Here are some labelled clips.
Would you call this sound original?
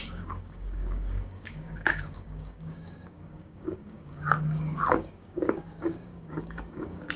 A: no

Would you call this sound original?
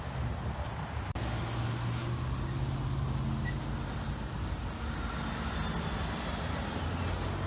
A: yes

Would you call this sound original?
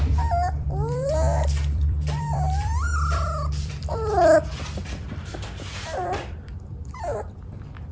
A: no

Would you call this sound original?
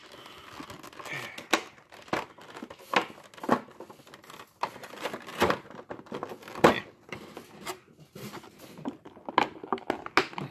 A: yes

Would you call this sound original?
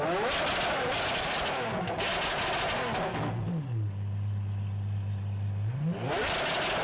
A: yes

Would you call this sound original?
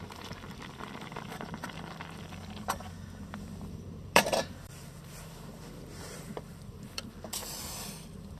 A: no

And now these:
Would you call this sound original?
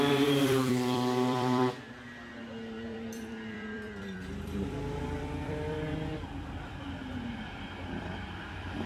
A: no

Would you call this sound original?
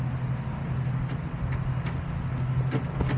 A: yes